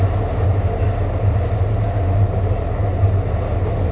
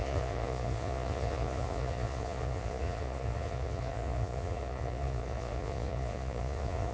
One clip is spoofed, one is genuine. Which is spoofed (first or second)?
second